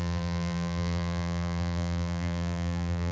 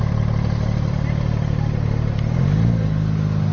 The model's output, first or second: first